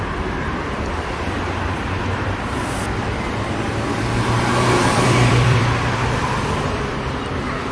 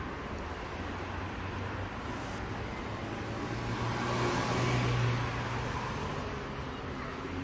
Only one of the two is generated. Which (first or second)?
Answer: first